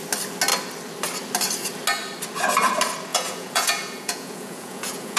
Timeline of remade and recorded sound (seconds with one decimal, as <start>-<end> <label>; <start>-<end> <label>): 0.0-3.1 recorded; 3.1-5.2 remade